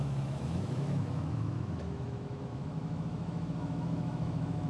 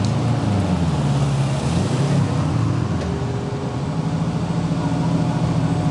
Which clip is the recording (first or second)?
second